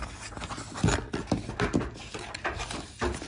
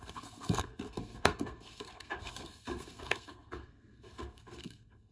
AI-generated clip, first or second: second